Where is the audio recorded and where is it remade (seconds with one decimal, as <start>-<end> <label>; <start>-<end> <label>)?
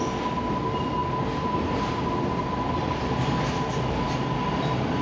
0.0-5.0 recorded